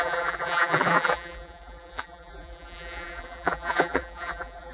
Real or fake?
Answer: fake